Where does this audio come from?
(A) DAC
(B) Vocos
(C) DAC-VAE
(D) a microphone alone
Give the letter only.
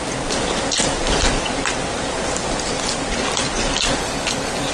D